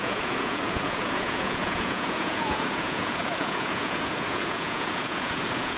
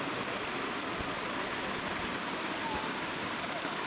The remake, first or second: first